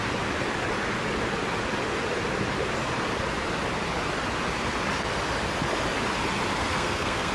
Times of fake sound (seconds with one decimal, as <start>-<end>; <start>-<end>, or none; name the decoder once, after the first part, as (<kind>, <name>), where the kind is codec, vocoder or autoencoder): 6.6-7.3 (codec, SNAC)